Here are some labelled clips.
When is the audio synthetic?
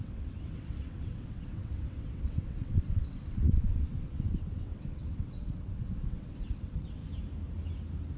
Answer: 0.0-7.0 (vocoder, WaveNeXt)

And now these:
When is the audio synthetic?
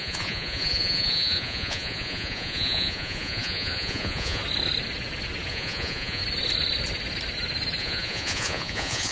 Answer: 0.0-4.4 (vocoder, Vocos); 5.5-6.2; 7.8-9.1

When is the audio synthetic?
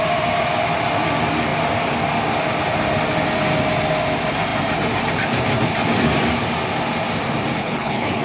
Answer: 7.6-8.2 (codec, HILCodec)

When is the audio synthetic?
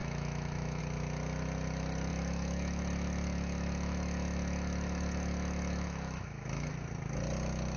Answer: 0.0-0.8 (autoencoder, DAC-VAE); 2.1-6.7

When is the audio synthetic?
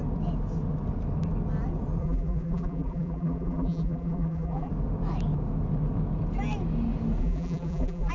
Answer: 2.0-4.7 (vocoder, BigVGAN v2); 7.2-8.1